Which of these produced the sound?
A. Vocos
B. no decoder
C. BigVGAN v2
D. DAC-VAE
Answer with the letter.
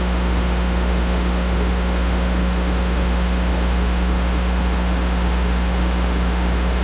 D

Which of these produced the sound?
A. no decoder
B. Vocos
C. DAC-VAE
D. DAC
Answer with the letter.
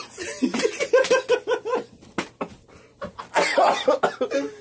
A